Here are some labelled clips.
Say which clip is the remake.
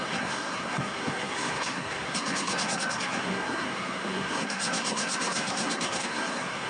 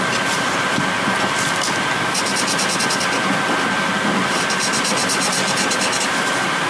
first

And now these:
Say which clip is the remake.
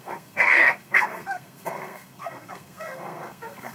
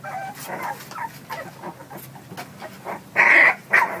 first